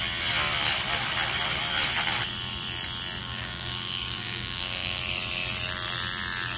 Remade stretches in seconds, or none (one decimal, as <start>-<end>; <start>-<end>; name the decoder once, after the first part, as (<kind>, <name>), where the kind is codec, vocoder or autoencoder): 3.2-5.0 (codec, DAC)